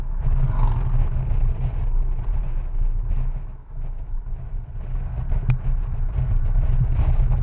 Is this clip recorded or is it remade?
recorded